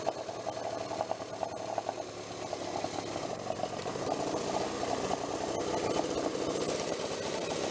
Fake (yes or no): no